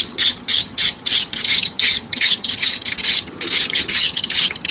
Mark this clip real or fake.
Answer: fake